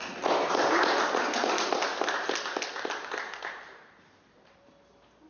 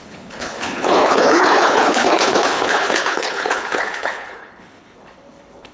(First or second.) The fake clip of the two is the second